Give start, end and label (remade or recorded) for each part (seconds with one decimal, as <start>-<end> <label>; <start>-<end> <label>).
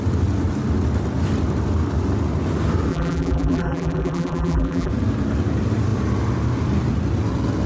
0.0-2.9 recorded; 2.9-4.9 remade; 4.9-7.7 recorded